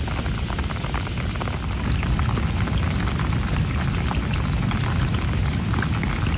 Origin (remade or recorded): recorded